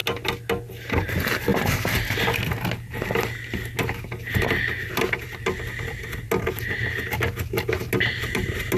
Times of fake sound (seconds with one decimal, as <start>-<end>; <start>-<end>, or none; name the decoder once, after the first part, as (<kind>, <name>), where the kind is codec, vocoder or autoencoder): none